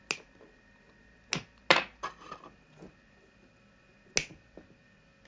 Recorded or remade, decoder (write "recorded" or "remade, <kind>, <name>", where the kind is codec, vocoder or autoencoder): recorded